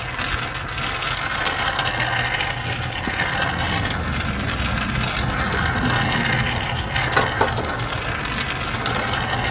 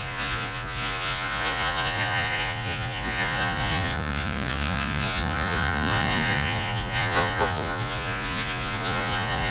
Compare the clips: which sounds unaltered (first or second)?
first